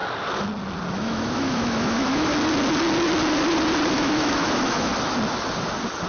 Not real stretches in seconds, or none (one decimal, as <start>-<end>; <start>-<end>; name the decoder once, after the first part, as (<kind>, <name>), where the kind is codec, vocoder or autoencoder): 0.9-2.3 (autoencoder, DAC-VAE); 3.9-4.9